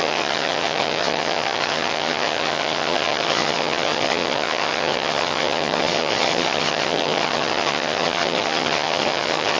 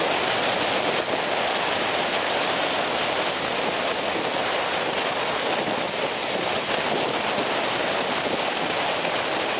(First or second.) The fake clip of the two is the first